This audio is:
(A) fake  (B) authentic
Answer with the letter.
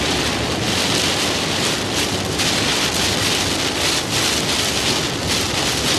B